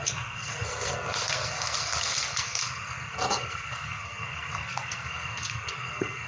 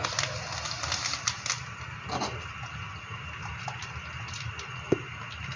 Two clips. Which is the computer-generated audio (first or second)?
first